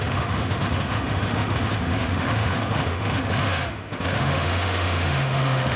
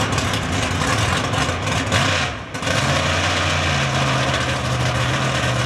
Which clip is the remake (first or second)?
first